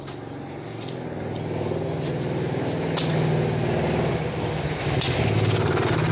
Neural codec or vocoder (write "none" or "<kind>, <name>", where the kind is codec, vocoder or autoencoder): none